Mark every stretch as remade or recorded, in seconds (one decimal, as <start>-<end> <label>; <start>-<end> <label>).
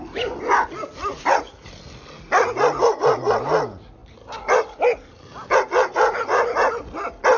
0.0-1.1 recorded; 1.1-1.7 remade; 1.7-7.4 recorded